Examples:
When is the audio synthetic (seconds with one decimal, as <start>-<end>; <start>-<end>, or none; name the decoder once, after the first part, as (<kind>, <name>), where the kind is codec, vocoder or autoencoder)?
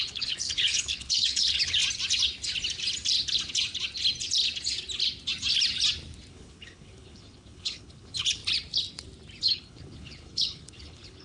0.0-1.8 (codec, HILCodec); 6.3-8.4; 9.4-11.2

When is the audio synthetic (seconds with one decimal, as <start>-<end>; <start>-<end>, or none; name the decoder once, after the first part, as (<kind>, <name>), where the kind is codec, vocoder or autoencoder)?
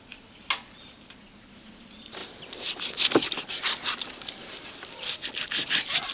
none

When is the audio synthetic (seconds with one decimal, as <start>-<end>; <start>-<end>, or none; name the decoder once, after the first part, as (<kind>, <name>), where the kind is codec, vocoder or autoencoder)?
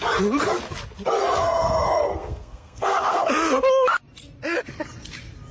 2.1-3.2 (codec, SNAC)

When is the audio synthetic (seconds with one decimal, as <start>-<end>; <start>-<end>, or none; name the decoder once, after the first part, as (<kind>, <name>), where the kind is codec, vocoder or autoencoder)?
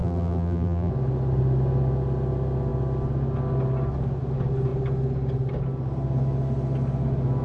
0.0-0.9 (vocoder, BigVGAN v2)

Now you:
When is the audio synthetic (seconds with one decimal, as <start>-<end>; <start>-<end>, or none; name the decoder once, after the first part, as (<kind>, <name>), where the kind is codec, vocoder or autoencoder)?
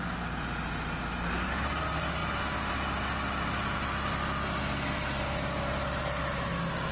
none